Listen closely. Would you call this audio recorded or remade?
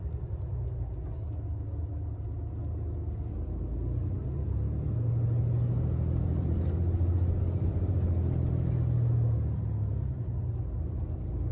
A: recorded